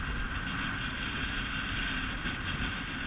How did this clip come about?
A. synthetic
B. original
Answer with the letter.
B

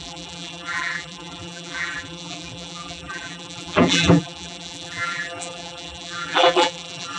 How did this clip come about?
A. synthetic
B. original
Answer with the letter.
A